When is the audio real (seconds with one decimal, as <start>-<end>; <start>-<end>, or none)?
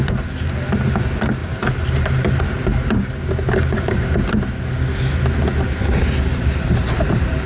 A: 0.0-1.4; 2.3-6.3